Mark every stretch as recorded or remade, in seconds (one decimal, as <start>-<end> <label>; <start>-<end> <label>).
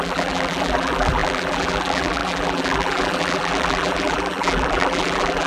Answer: 0.0-5.5 remade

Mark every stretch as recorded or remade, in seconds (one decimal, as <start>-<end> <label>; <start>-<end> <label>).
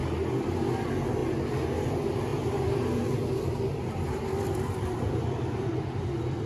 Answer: 0.0-0.5 recorded; 0.5-1.2 remade; 1.2-1.9 recorded; 1.9-6.5 remade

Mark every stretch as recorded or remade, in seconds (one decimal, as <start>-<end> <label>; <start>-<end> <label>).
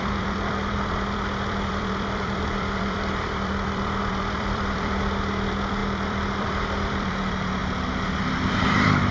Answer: 0.0-7.6 remade; 7.6-8.2 recorded; 8.2-9.1 remade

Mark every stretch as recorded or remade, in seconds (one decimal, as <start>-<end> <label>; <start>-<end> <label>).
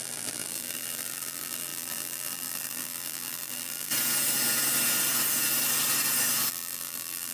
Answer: 0.0-3.9 remade; 3.9-6.5 recorded; 6.5-7.3 remade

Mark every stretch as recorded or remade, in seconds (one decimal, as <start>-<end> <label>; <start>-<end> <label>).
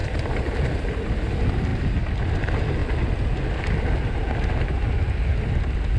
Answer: 0.0-1.7 recorded; 1.7-2.4 remade; 2.4-6.0 recorded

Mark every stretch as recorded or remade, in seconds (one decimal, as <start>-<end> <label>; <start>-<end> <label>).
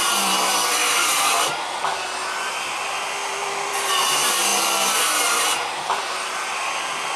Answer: 0.0-0.8 remade; 0.8-1.5 recorded; 1.5-7.2 remade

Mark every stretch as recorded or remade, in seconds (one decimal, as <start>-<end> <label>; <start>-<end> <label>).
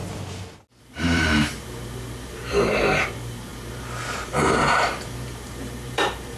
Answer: 0.0-0.8 recorded; 0.8-6.4 remade